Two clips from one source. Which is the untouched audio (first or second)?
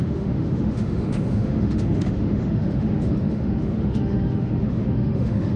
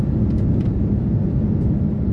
second